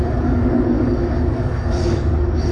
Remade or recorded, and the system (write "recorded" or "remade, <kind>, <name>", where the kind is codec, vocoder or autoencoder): remade, codec, DAC